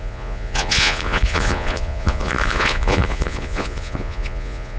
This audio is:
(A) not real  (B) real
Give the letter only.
A